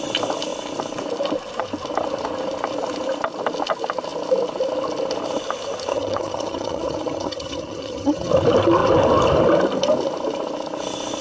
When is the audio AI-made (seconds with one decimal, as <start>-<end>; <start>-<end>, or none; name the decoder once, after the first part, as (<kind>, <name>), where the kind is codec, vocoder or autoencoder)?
5.9-8.3 (vocoder, HiFi-GAN)